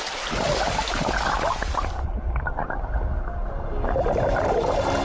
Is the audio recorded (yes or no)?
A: yes